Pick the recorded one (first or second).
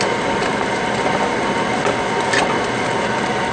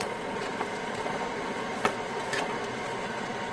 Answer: first